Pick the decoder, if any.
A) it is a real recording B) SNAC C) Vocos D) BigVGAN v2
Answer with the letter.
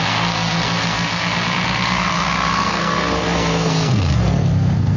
B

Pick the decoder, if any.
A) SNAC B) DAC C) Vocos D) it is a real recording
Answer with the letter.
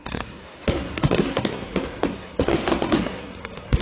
A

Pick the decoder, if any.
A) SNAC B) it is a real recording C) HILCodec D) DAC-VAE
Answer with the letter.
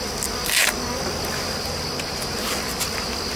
B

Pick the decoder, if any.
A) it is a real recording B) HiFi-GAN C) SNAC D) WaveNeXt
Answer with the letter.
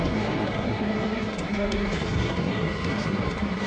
C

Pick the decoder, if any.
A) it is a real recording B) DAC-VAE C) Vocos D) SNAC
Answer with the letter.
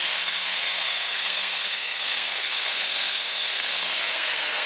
D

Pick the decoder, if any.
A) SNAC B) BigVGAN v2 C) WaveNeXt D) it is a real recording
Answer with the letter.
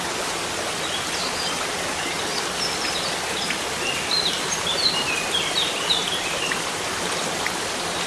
D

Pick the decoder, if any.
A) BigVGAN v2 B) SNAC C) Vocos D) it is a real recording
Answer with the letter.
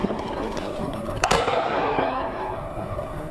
B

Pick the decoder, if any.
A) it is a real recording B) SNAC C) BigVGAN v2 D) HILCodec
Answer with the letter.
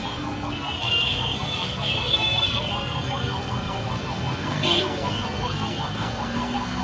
B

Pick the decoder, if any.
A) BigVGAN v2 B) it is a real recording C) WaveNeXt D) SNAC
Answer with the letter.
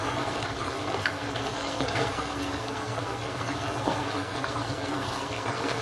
D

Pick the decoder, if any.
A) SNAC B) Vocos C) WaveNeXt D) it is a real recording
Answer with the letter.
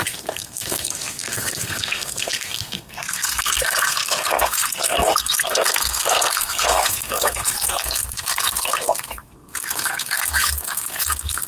A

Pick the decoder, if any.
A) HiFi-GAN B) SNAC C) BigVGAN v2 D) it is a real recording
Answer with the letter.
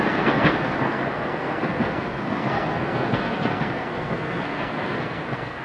B